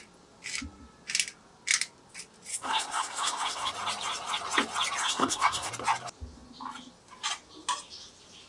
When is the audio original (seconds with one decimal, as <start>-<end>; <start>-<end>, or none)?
0.0-2.5; 3.7-5.0; 5.7-8.5